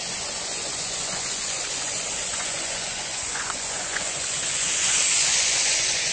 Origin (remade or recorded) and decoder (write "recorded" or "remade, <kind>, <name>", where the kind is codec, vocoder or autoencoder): remade, vocoder, Vocos